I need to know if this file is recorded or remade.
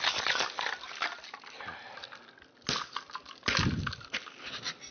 recorded